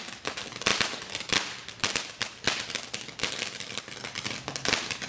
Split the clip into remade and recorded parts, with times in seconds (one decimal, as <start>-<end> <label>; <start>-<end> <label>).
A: 0.0-5.1 recorded